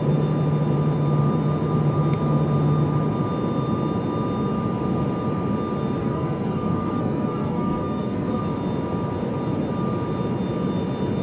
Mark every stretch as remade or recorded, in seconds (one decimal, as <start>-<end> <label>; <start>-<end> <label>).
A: 0.0-6.0 recorded; 6.0-8.4 remade; 8.4-11.2 recorded